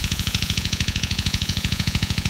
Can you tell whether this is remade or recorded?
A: remade